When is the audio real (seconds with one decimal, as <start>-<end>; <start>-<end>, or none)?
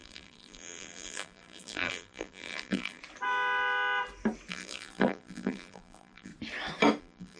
3.0-4.5; 6.3-7.0